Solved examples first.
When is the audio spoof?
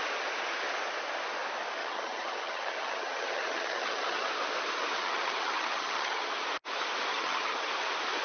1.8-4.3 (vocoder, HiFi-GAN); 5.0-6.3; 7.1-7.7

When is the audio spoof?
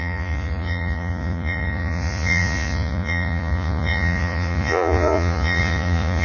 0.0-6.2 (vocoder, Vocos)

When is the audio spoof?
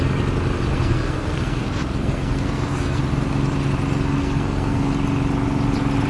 0.7-3.0 (codec, SNAC); 4.2-4.9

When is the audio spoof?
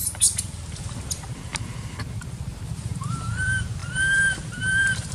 1.0-5.1 (vocoder, BigVGAN v2)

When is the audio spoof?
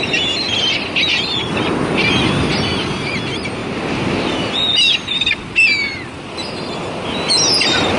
none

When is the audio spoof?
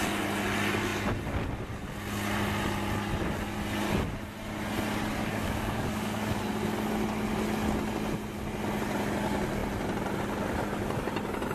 5.2-6.4 (codec, DAC)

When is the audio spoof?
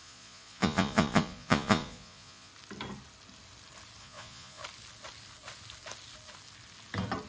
0.0-2.5 (vocoder, Vocos); 4.0-4.6